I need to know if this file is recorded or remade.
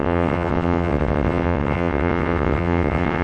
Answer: remade